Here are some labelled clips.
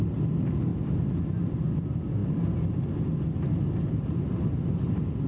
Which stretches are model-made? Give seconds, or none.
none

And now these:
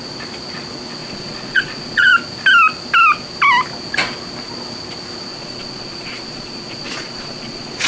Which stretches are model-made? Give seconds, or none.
1.0-2.1; 5.3-7.9

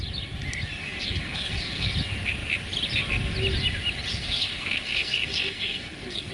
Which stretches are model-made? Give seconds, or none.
0.8-1.9; 4.1-6.3

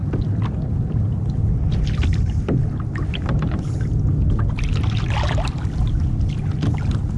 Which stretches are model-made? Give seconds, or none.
none

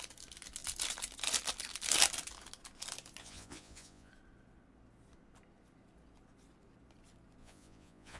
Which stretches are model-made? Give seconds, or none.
3.2-4.1; 7.4-8.2

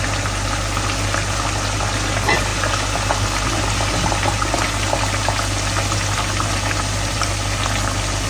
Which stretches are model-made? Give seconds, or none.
none

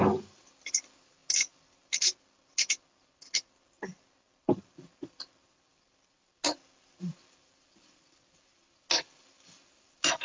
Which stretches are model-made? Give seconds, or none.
none

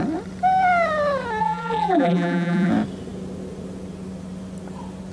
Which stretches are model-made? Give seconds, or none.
1.4-2.7